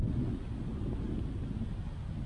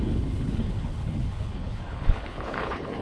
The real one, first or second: first